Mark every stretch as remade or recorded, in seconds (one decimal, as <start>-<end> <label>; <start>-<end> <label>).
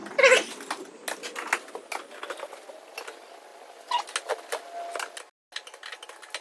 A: 0.0-6.4 recorded